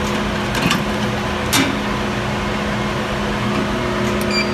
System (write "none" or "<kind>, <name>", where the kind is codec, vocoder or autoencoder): none